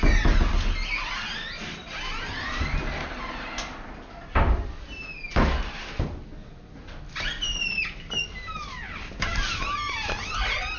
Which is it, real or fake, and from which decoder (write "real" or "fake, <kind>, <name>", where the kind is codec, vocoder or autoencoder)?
real